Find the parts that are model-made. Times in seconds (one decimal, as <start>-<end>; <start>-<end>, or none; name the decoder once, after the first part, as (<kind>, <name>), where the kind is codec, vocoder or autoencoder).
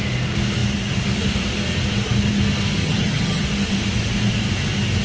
2.8-3.4 (vocoder, HiFi-GAN)